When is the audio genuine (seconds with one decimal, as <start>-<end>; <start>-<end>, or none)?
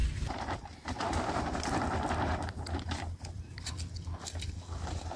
1.0-2.3; 3.7-5.2